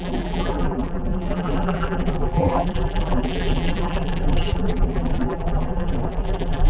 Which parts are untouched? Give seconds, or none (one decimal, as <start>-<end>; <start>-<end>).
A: none